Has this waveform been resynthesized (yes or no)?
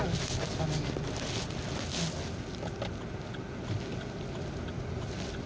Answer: no